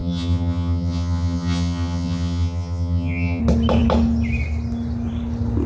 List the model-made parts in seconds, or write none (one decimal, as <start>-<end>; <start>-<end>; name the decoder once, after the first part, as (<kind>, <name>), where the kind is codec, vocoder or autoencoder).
0.0-3.4 (vocoder, HiFi-GAN)